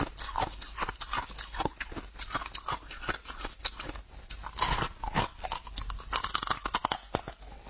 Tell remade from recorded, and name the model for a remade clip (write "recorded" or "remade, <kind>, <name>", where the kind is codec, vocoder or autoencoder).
recorded